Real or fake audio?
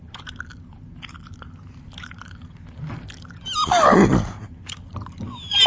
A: real